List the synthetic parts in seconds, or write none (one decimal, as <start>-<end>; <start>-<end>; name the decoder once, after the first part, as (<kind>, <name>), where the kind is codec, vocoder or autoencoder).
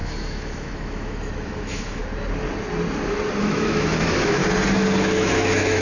0.0-2.0 (autoencoder, DAC-VAE); 3.4-4.4; 5.0-5.8